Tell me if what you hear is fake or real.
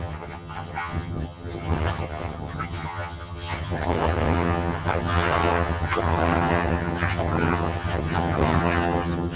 fake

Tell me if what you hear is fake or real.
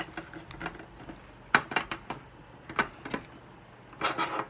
real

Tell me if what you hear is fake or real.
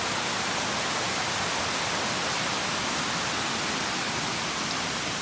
real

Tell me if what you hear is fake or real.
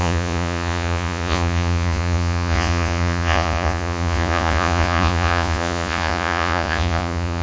fake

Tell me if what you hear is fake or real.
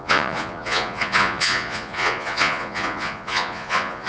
fake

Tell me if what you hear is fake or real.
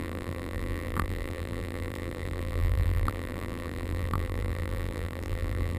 fake